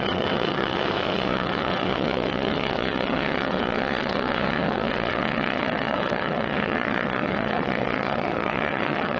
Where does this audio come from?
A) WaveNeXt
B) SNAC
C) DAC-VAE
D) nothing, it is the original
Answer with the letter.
A